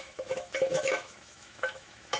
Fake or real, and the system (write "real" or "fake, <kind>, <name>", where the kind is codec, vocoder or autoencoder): fake, autoencoder, DAC-VAE